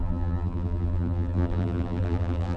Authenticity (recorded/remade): remade